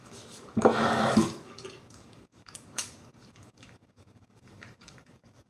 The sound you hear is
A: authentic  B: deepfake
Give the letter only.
B